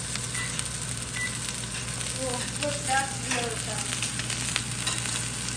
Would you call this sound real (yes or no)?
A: yes